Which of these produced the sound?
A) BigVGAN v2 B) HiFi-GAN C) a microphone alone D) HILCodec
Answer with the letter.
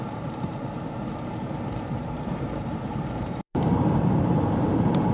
A